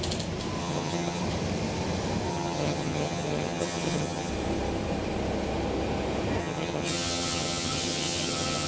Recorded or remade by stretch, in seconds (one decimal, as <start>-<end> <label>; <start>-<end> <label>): 0.0-0.6 recorded; 0.6-1.2 remade; 1.2-2.3 recorded; 2.3-4.3 remade; 4.3-6.4 recorded; 6.4-8.7 remade